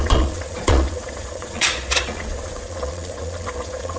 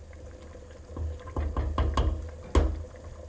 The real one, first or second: second